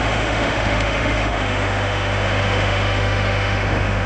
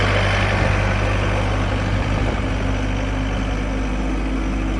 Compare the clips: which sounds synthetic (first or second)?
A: first